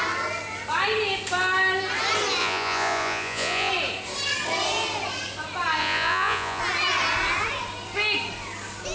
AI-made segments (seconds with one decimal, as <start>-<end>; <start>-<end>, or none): 2.4-3.7; 5.8-6.6